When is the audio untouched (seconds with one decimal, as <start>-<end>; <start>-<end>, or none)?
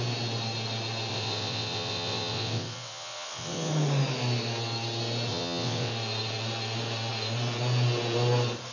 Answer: 0.0-1.1; 3.7-5.3; 5.9-8.7